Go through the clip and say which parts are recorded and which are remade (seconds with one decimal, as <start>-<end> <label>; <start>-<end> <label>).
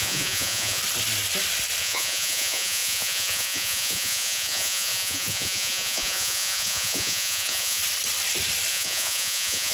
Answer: 0.0-0.8 remade; 0.8-1.8 recorded; 1.8-7.8 remade; 7.8-8.7 recorded; 8.7-9.7 remade